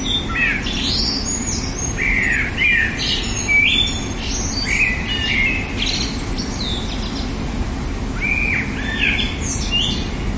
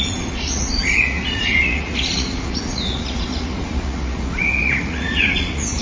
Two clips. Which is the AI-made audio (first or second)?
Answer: second